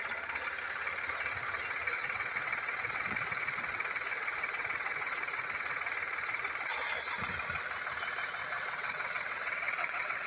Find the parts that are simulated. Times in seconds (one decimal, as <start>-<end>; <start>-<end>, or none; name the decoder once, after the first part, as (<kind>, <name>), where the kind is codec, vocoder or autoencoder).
1.9-5.8 (vocoder, WaveNeXt); 8.4-10.3